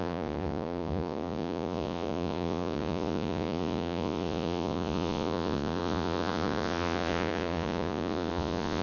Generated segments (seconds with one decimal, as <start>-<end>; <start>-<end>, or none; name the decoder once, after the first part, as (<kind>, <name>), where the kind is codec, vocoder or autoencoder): 0.0-8.8 (vocoder, Vocos)

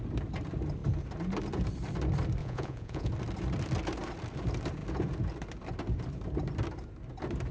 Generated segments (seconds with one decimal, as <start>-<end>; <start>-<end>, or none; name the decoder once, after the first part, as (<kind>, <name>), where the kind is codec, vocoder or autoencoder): 2.4-3.1 (vocoder, Vocos)